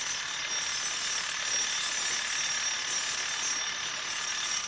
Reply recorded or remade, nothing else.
recorded